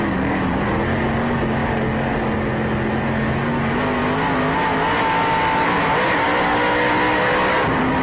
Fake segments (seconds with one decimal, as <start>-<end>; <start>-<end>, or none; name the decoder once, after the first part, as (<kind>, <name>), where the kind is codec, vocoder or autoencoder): none